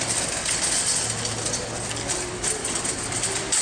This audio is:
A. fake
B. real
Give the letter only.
B